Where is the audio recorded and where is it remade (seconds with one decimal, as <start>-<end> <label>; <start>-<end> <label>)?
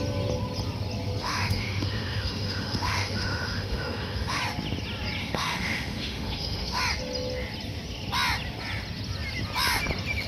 0.0-1.2 recorded; 1.2-4.4 remade; 4.4-5.2 recorded; 5.2-6.8 remade; 6.8-10.3 recorded